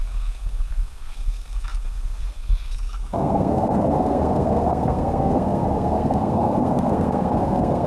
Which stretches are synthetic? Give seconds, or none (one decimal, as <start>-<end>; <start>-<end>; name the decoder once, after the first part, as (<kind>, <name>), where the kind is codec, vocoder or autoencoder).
0.0-7.9 (codec, SNAC)

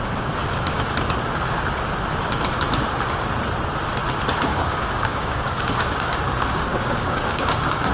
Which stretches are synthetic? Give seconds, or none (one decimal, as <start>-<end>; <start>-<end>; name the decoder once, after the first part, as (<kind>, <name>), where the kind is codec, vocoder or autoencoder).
4.5-7.9 (codec, DAC)

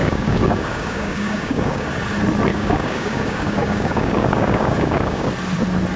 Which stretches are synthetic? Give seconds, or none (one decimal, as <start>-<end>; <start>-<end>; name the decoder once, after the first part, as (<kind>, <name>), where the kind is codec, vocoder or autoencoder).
0.0-1.9 (codec, DAC); 2.5-5.3

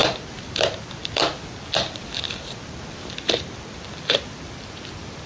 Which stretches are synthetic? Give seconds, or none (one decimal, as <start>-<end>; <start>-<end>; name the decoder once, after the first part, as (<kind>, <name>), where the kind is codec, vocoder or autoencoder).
none

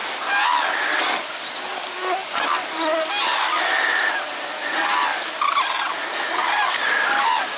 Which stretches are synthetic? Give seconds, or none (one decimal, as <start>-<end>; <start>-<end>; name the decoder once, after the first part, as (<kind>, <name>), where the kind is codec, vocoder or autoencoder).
none

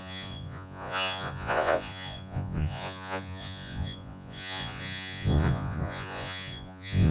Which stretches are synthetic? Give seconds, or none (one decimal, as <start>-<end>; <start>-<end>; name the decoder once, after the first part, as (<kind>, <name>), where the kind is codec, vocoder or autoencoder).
0.0-7.1 (vocoder, Vocos)